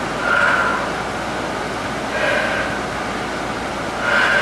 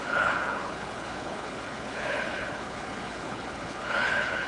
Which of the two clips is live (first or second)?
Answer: first